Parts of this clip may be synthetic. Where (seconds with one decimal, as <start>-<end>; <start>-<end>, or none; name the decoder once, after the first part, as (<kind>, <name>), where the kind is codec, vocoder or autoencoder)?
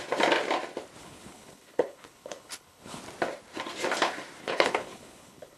1.0-3.0 (codec, HILCodec); 4.4-5.6